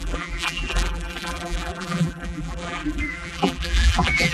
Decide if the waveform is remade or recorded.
remade